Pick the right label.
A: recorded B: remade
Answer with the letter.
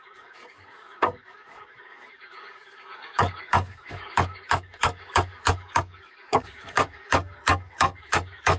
B